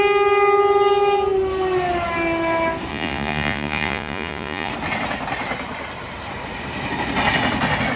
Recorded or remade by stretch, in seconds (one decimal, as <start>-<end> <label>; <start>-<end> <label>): 0.0-2.9 recorded; 2.9-4.7 remade; 4.7-8.0 recorded